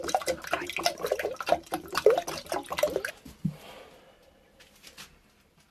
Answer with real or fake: real